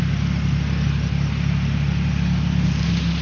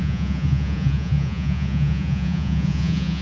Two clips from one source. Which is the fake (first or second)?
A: second